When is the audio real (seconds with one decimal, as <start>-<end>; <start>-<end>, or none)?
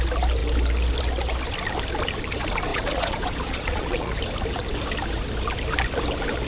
0.0-2.7; 4.2-6.5